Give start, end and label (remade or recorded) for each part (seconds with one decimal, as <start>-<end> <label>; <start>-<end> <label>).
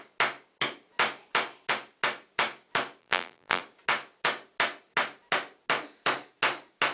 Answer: 0.0-3.0 recorded; 3.0-3.6 remade; 3.6-6.9 recorded